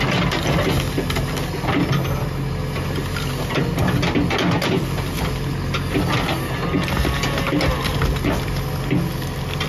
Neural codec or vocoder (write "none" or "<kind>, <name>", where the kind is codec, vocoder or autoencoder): none